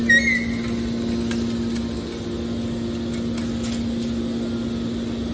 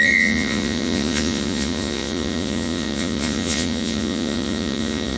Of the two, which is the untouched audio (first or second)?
first